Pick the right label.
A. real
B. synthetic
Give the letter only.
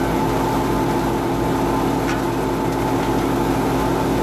A